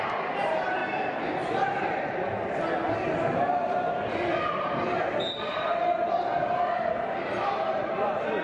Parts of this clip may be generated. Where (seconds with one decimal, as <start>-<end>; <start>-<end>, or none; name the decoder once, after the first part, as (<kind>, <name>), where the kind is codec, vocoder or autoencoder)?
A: 0.0-0.8 (vocoder, BigVGAN v2); 5.4-8.4